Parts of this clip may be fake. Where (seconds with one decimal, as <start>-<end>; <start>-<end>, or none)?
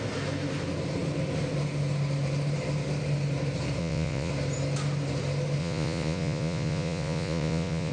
3.8-4.3; 5.6-7.9